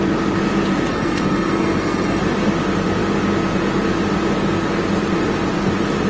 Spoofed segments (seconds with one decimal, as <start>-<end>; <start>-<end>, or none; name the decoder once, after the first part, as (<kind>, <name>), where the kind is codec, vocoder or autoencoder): 0.9-2.2 (codec, SNAC)